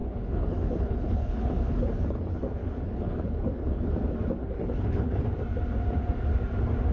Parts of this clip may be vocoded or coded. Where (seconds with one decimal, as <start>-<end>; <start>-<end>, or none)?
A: 0.0-3.9; 4.4-5.2